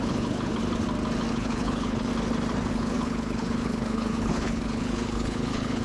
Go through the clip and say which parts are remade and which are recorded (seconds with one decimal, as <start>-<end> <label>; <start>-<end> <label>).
0.0-0.6 remade; 0.6-1.3 recorded; 1.3-2.1 remade; 2.1-2.7 recorded; 2.7-5.8 remade

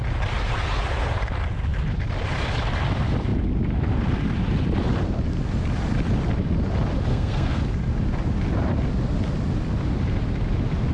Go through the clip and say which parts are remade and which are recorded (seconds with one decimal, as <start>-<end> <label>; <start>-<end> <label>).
0.0-7.1 recorded; 7.1-7.6 remade; 7.6-10.9 recorded

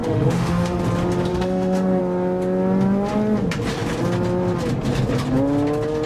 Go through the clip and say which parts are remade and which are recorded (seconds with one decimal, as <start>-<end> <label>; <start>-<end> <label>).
0.0-0.8 remade; 0.8-1.3 recorded; 1.3-2.0 remade; 2.0-6.1 recorded

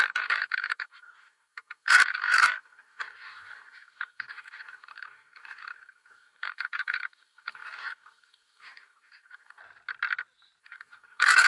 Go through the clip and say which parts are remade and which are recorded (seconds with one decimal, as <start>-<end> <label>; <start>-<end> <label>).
0.0-9.6 remade; 9.6-10.6 recorded; 10.6-11.5 remade

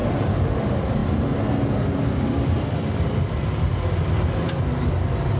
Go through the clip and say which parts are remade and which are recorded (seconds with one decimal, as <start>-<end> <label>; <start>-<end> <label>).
0.0-5.4 recorded

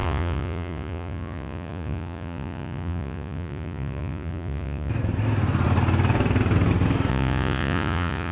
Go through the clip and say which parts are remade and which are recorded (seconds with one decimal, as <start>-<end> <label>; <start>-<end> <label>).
0.0-4.9 remade; 4.9-7.1 recorded; 7.1-8.3 remade

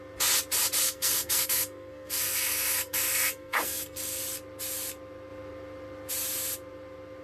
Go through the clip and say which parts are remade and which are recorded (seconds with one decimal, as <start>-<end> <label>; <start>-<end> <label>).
0.0-0.8 recorded; 0.8-4.2 remade; 4.2-7.2 recorded

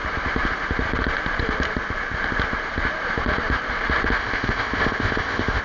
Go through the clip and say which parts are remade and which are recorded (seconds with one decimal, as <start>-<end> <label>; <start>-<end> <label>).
0.0-4.2 recorded; 4.2-5.6 remade